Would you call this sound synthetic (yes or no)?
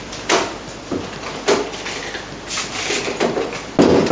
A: no